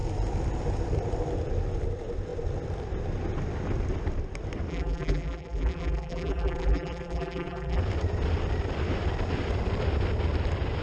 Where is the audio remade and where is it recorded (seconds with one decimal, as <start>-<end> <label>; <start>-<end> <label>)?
0.0-4.7 recorded; 4.7-7.8 remade; 7.8-10.8 recorded